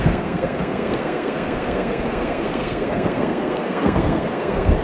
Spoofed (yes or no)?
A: yes